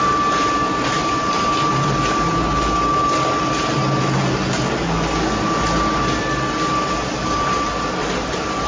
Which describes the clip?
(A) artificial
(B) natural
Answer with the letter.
B